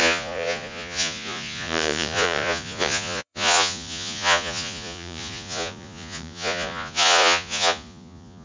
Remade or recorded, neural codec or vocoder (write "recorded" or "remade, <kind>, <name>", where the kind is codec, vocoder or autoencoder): remade, vocoder, Vocos